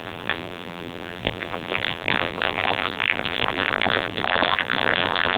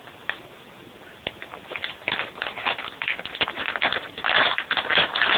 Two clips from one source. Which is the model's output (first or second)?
first